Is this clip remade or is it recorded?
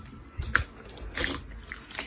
recorded